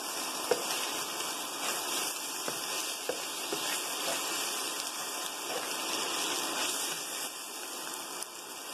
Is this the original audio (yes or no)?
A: yes